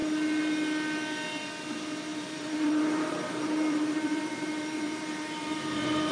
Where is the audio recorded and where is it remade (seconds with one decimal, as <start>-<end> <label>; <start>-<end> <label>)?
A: 0.0-2.1 recorded; 2.1-6.1 remade

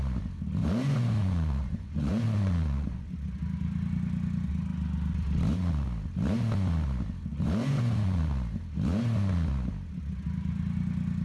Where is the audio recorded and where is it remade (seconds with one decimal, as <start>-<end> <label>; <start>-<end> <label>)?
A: 0.0-0.6 recorded; 0.6-3.1 remade; 3.1-7.3 recorded; 7.3-8.2 remade; 8.2-11.2 recorded

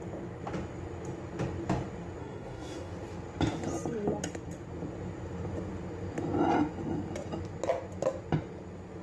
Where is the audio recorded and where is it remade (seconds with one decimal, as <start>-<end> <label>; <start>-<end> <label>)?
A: 0.0-2.2 recorded; 2.2-2.9 remade; 2.9-9.0 recorded

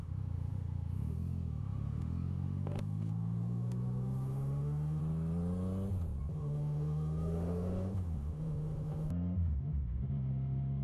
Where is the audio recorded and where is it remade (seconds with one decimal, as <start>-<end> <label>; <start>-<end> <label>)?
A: 0.0-5.0 remade; 5.0-6.3 recorded; 6.3-10.8 remade

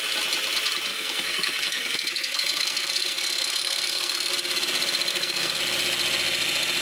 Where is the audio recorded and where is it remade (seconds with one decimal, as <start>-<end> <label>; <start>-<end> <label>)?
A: 0.0-0.9 recorded; 0.9-4.3 remade; 4.3-5.1 recorded; 5.1-5.6 remade; 5.6-6.8 recorded

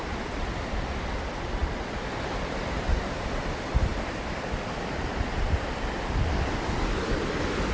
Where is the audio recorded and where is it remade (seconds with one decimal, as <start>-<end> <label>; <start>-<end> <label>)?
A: 0.0-1.6 remade; 1.6-2.2 recorded; 2.2-7.7 remade

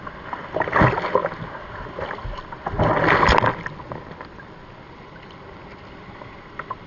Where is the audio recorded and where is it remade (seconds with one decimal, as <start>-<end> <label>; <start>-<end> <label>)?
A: 0.0-6.9 recorded